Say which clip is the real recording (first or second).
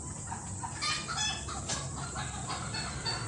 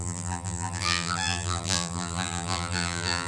first